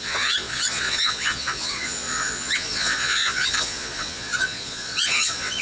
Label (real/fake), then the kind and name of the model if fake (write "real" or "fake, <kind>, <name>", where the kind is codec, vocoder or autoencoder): fake, vocoder, Vocos